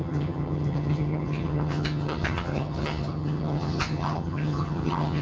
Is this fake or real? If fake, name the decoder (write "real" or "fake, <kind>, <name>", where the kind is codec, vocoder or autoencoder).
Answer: fake, vocoder, HiFi-GAN